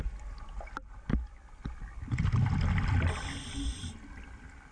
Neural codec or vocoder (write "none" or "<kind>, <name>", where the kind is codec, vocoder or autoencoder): none